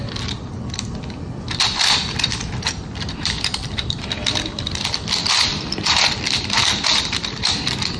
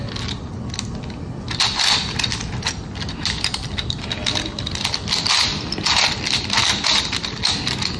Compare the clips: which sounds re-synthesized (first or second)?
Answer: first